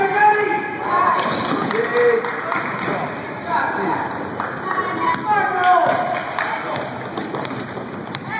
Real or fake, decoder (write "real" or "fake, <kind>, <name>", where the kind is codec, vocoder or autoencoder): fake, vocoder, BigVGAN v2